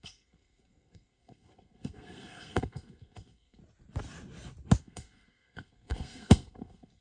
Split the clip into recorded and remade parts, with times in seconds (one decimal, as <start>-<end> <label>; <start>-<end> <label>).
0.0-3.6 remade; 3.6-4.8 recorded; 4.8-7.0 remade